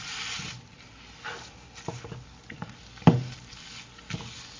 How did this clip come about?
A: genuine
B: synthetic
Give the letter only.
A